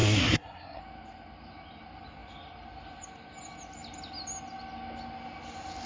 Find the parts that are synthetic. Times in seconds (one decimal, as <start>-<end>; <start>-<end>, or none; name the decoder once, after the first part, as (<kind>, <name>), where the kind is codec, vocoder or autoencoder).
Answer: 0.0-0.8 (codec, SNAC)